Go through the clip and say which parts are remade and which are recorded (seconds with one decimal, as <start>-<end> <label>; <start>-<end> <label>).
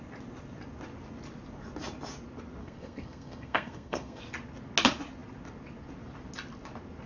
0.0-2.6 recorded; 2.6-4.2 remade; 4.2-7.1 recorded